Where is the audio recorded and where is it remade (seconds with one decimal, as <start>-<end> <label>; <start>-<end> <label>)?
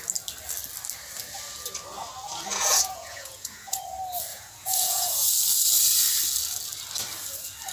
0.0-2.5 recorded; 2.5-3.8 remade; 3.8-4.3 recorded; 4.3-5.3 remade; 5.3-7.7 recorded